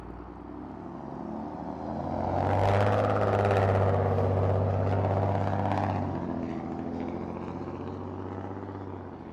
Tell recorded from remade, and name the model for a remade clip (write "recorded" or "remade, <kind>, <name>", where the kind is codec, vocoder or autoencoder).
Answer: recorded